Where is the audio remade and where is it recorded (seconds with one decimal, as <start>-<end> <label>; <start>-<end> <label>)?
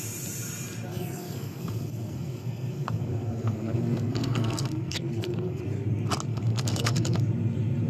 0.0-0.9 recorded; 0.9-5.6 remade; 5.6-6.3 recorded; 6.3-7.2 remade; 7.2-7.9 recorded